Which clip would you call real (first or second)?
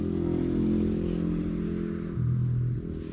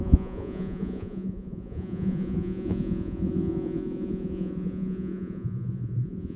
first